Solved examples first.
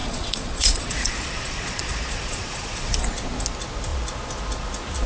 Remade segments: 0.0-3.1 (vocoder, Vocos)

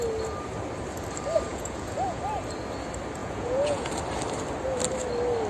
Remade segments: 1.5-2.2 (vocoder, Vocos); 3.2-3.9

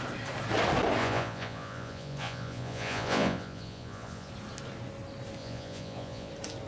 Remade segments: 1.0-4.3 (vocoder, Vocos); 5.4-6.3